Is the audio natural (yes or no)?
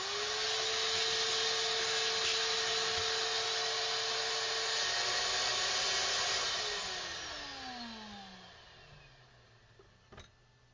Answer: yes